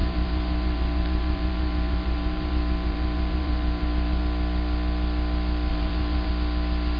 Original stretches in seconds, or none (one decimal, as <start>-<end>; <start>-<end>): 4.2-5.7; 6.3-7.0

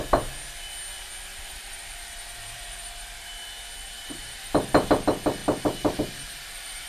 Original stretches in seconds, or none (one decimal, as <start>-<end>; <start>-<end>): 0.0-1.3; 3.3-3.8; 4.9-5.4

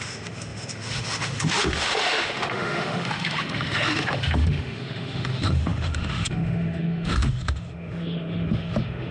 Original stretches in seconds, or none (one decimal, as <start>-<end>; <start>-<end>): none

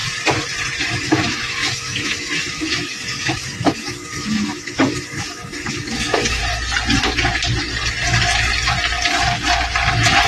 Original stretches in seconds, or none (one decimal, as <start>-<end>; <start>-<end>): 0.0-1.0; 6.4-10.3